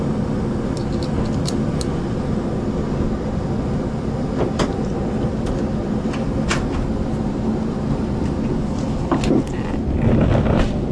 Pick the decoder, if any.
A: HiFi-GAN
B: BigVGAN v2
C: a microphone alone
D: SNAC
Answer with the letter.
C